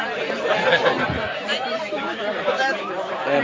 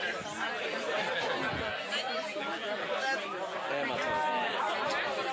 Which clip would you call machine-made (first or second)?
first